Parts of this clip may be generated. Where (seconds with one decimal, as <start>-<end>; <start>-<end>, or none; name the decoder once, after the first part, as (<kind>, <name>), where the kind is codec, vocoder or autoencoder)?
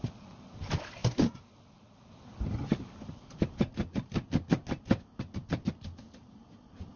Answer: none